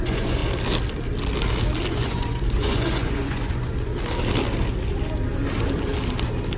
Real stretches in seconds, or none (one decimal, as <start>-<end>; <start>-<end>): 0.4-1.9; 3.9-6.6